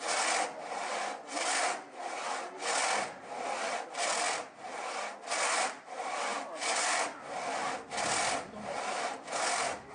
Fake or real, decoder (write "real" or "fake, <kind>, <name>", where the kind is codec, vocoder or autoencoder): real